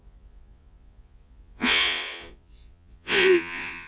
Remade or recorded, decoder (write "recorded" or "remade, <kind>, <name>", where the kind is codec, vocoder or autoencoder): remade, vocoder, Vocos